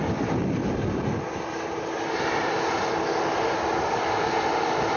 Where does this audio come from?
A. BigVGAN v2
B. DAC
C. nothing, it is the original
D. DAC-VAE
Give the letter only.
C